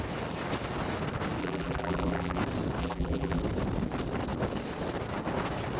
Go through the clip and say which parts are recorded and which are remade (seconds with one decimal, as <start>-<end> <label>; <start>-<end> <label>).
0.0-1.4 recorded; 1.4-2.4 remade; 2.4-2.8 recorded; 2.8-3.4 remade; 3.4-5.8 recorded